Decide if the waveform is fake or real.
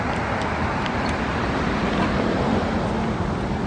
real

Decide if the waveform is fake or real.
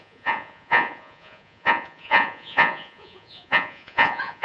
fake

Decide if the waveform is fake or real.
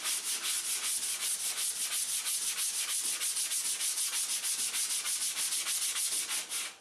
real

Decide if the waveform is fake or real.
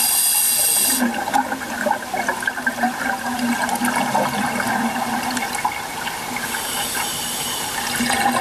real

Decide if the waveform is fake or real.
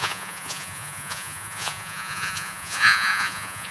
fake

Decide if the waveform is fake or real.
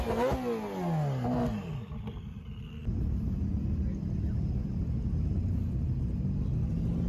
real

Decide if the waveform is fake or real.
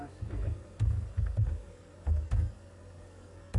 fake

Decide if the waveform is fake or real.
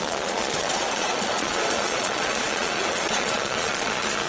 fake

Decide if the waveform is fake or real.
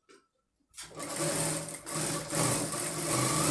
real